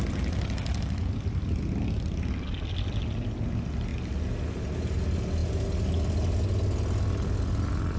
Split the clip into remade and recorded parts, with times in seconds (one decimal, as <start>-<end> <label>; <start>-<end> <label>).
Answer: 0.0-8.0 recorded